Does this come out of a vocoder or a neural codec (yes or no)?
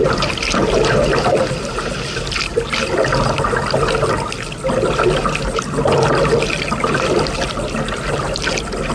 no